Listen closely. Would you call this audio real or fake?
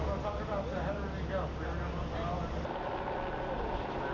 real